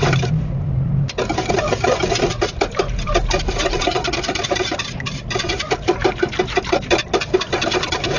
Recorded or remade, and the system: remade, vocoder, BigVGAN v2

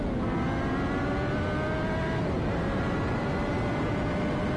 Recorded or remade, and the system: recorded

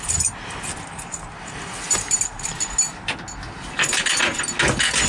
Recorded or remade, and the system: recorded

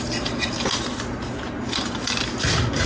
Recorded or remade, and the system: recorded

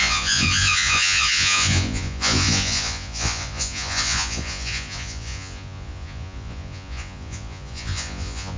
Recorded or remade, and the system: remade, vocoder, Vocos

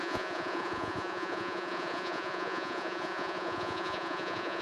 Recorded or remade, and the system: remade, vocoder, Vocos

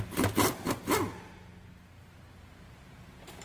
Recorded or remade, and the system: recorded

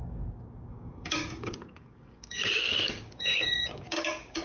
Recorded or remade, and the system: remade, codec, DAC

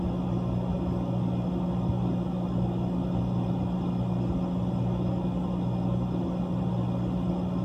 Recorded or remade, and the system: recorded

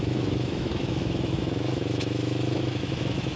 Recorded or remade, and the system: remade, autoencoder, DAC-VAE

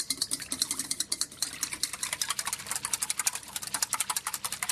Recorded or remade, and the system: recorded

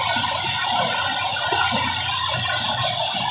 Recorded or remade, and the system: recorded